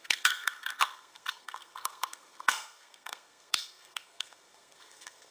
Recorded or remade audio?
remade